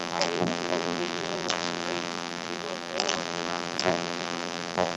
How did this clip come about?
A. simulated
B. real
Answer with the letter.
A